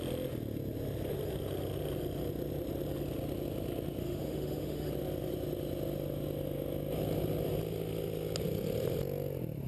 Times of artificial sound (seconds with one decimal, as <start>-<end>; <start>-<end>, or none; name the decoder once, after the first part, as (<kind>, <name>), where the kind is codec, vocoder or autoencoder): 4.0-4.9 (autoencoder, DAC-VAE)

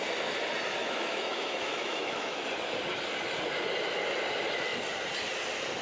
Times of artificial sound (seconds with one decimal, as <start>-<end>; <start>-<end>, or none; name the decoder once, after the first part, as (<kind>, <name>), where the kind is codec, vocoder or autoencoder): 0.8-2.4 (autoencoder, DAC-VAE)

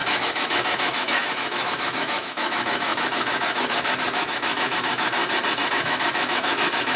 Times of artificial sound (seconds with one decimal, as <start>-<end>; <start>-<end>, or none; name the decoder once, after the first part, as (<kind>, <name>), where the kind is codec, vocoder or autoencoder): 0.0-5.2 (autoencoder, DAC-VAE); 5.7-7.0